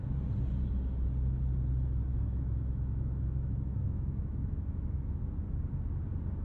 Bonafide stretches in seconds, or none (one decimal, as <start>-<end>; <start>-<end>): 0.0-2.1; 5.2-6.4